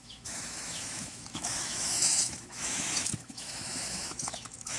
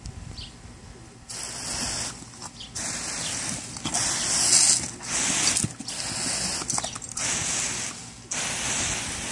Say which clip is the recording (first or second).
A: second